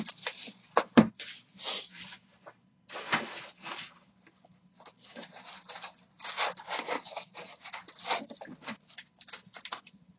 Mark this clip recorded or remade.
recorded